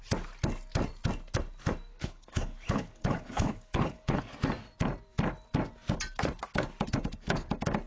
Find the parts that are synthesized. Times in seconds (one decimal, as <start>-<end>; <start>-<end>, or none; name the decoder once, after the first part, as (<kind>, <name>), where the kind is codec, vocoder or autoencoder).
1.9-4.2 (codec, HILCodec)